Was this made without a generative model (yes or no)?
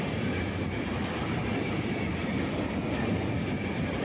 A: yes